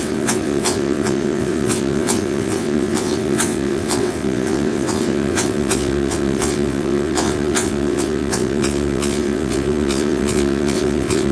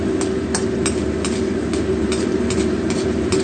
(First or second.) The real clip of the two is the second